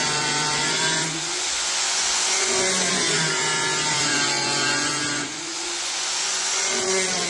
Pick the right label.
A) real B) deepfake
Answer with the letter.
B